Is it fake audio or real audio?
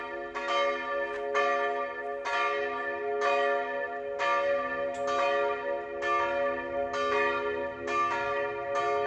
real